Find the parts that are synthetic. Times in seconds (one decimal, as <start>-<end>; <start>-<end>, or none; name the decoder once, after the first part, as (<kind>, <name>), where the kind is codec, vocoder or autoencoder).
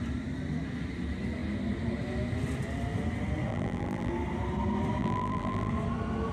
3.5-4.1 (vocoder, BigVGAN v2); 5.0-5.7